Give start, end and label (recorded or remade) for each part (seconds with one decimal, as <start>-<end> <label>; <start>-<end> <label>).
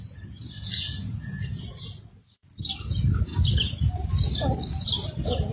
0.0-5.5 recorded